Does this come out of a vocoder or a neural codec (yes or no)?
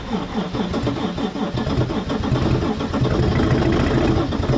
no